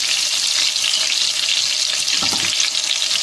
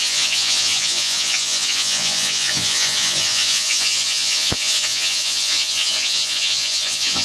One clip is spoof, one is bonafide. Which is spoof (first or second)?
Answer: second